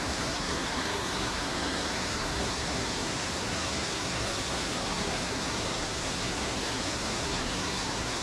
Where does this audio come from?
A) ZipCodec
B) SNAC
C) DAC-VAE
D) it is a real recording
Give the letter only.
B